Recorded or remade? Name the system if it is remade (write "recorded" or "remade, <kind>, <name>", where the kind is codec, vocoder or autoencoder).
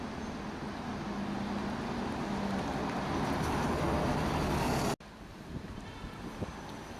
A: recorded